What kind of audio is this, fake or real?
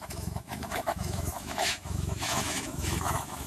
fake